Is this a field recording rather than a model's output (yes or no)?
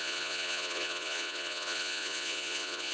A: no